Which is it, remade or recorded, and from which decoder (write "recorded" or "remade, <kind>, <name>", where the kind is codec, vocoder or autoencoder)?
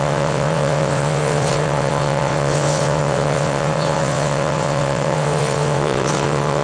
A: remade, vocoder, WaveNeXt